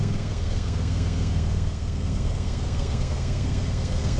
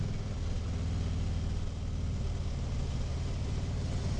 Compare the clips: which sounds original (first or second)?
second